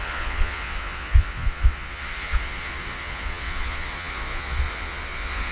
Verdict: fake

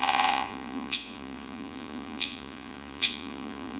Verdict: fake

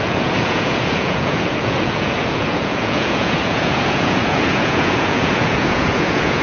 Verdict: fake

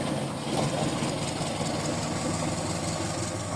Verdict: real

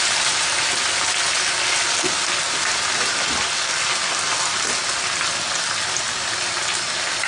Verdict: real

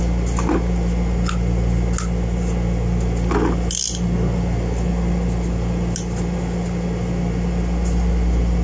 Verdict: real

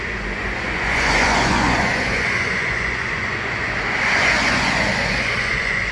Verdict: fake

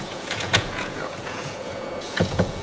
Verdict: fake